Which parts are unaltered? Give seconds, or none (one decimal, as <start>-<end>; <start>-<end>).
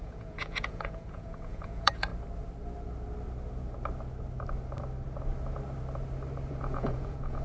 2.1-6.5